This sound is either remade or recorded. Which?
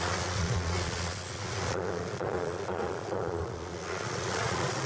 remade